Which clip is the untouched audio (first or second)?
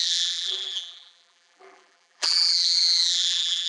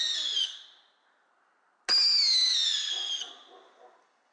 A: second